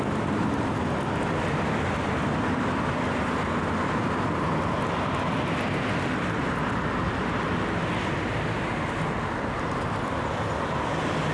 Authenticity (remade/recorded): recorded